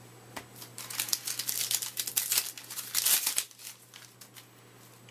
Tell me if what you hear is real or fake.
real